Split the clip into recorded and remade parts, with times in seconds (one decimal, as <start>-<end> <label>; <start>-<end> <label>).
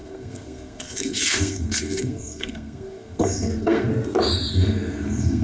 0.0-3.9 remade; 3.9-4.5 recorded; 4.5-5.4 remade